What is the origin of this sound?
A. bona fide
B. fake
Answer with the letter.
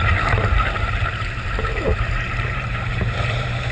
B